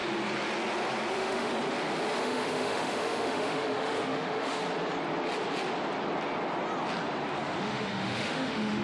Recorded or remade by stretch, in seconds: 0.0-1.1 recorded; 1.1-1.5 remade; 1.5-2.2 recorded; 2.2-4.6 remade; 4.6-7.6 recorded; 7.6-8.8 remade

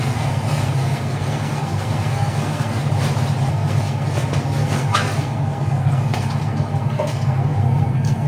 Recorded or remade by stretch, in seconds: 0.0-2.8 remade; 2.8-3.5 recorded; 3.5-8.3 remade

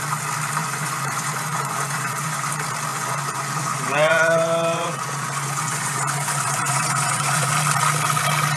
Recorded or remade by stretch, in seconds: 0.0-0.6 recorded; 0.6-2.5 remade; 2.5-2.9 recorded; 2.9-7.5 remade; 7.5-8.6 recorded

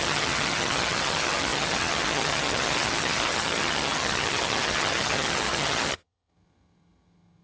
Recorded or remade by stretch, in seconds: 0.0-7.4 remade

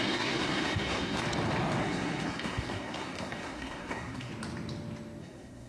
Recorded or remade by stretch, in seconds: 0.0-1.2 remade; 1.2-1.8 recorded; 1.8-4.3 remade; 4.3-5.2 recorded; 5.2-5.7 remade

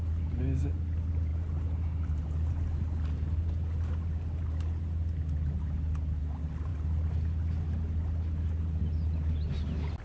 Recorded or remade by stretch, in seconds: 0.0-10.0 recorded

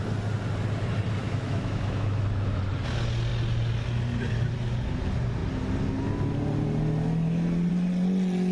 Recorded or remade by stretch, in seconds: 0.0-1.2 recorded; 1.2-2.6 remade; 2.6-8.5 recorded

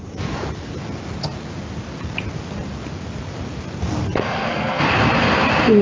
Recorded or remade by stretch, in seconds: 0.0-4.2 recorded; 4.2-4.8 remade; 4.8-5.8 recorded